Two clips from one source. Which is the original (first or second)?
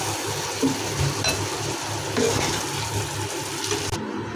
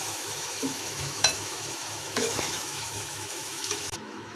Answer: first